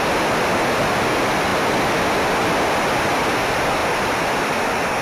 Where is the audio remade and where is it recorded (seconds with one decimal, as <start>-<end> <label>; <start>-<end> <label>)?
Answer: 0.0-5.0 recorded